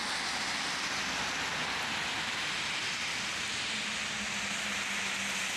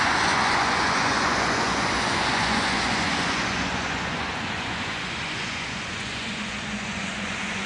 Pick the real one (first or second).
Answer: first